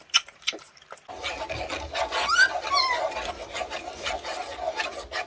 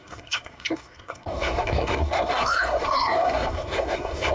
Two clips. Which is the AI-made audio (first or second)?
second